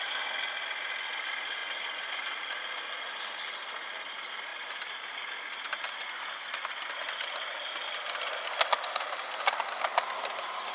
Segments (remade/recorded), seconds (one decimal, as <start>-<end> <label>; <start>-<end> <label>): 0.0-10.7 recorded